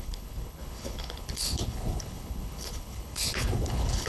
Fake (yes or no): yes